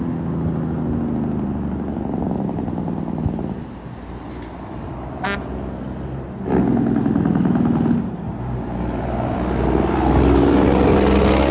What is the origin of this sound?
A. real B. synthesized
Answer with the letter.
A